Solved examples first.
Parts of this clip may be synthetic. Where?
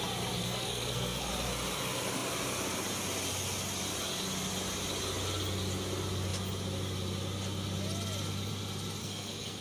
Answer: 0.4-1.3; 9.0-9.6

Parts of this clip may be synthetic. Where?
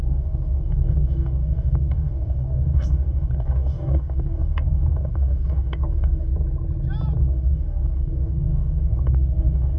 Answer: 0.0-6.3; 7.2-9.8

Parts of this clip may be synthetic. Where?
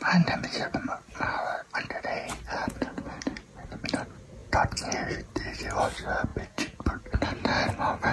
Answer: 2.6-3.2; 4.4-5.2; 6.3-7.1